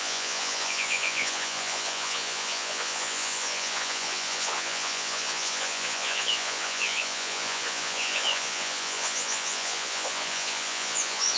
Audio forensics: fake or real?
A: fake